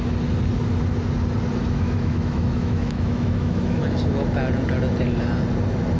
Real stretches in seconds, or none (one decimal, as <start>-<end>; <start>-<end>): 0.0-1.6; 3.8-6.0